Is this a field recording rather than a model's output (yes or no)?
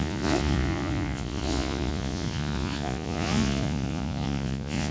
no